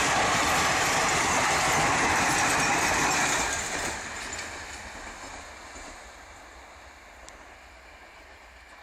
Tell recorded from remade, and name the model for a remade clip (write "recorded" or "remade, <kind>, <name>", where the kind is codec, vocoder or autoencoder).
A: recorded